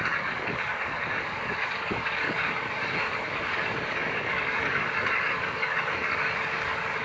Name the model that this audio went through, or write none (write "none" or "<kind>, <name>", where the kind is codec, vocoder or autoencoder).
codec, DAC